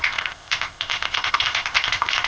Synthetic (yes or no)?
yes